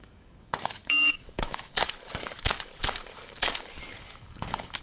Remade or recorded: remade